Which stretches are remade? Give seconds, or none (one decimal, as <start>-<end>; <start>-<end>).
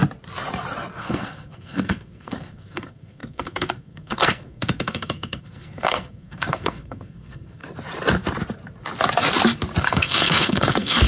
1.0-7.6; 9.8-11.1